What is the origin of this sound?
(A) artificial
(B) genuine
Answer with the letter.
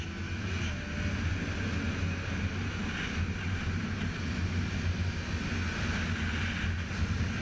B